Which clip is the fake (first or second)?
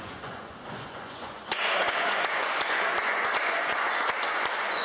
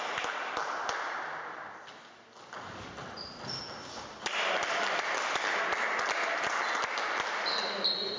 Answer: first